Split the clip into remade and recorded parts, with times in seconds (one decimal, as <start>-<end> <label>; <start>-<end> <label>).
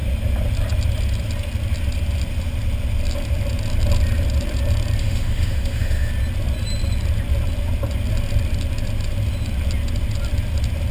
0.0-5.0 recorded; 5.0-6.1 remade; 6.1-10.9 recorded